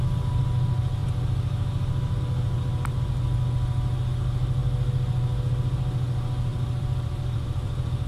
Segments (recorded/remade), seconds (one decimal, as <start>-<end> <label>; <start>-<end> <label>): 0.0-6.5 recorded; 6.5-8.1 remade